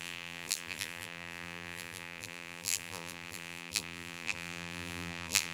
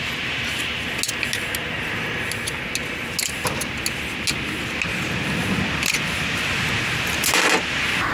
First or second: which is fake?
first